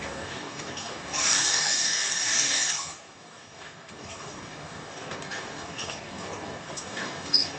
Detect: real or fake fake